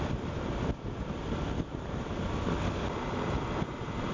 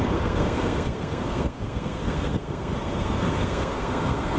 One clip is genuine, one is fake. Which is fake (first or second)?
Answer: second